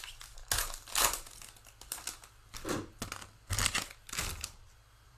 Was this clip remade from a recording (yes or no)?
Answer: no